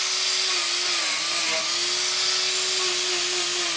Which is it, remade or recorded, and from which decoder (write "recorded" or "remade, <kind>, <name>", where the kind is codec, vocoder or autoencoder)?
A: recorded